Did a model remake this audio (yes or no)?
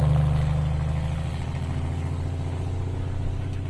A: no